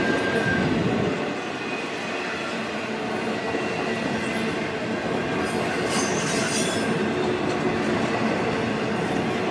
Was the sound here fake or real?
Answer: real